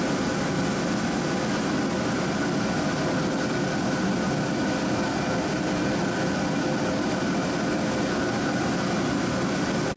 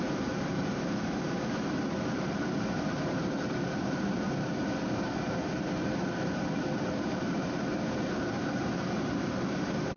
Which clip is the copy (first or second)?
second